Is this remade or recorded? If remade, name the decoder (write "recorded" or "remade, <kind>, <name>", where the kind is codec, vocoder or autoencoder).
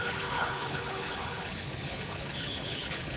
remade, codec, HILCodec